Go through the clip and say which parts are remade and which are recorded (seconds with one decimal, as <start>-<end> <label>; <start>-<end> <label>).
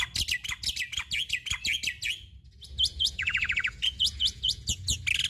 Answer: 0.0-2.9 recorded; 2.9-4.7 remade; 4.7-5.3 recorded